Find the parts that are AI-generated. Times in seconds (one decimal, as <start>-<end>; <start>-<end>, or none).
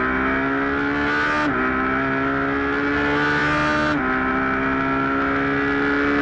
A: none